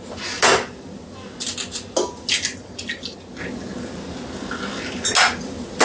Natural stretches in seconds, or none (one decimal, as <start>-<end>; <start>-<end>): 0.0-5.8